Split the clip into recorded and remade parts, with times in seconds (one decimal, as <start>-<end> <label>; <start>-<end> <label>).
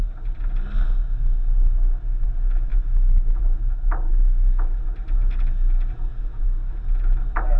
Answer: 0.0-2.7 recorded; 2.7-3.4 remade; 3.4-4.1 recorded; 4.1-4.8 remade; 4.8-6.1 recorded; 6.1-6.8 remade; 6.8-7.6 recorded